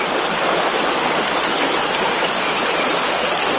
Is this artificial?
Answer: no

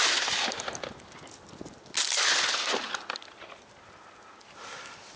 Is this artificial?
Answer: no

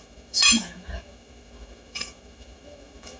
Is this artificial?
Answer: yes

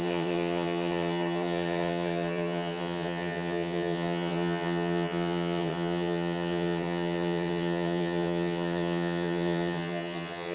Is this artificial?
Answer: yes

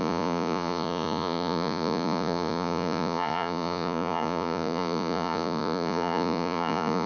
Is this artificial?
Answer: yes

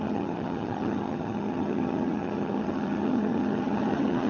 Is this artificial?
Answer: yes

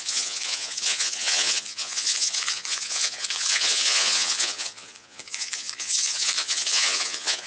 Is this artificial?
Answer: yes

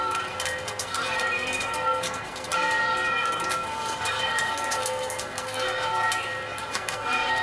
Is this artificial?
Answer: yes